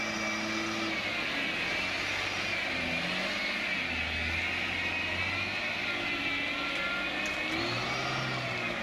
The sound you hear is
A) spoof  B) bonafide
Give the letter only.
B